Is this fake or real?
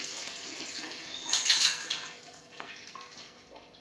fake